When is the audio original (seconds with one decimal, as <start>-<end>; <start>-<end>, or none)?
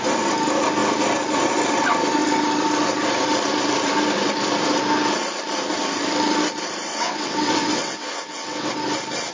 0.0-6.9; 8.7-9.3